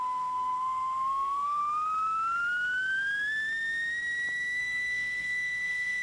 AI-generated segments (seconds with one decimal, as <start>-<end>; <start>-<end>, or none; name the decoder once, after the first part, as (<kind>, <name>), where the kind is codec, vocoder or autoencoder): 0.0-1.6 (codec, SNAC); 4.6-6.0